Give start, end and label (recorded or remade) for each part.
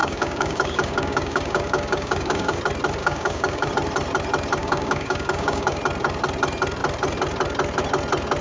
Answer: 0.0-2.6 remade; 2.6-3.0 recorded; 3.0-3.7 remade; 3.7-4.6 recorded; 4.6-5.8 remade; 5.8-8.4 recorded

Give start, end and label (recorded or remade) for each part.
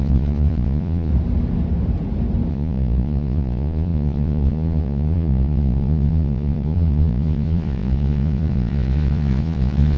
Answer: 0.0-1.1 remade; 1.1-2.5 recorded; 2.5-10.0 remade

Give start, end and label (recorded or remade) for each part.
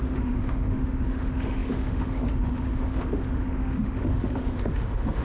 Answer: 0.0-5.2 remade